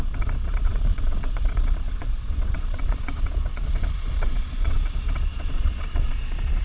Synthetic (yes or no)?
yes